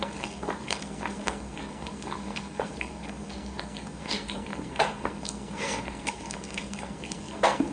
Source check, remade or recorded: remade